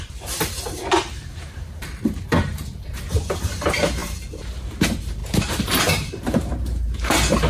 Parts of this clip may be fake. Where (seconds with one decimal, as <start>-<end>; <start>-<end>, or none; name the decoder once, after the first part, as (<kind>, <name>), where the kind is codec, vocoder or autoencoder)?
0.0-7.5 (vocoder, BigVGAN v2)